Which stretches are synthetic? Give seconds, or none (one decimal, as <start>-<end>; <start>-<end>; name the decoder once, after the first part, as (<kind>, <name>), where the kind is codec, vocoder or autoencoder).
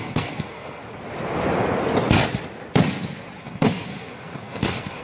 0.0-0.8 (codec, SNAC); 3.4-5.0